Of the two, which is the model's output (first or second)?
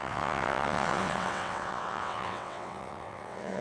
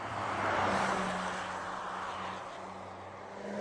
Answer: first